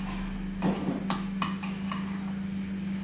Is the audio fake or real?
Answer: real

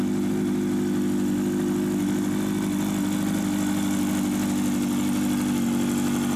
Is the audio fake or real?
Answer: real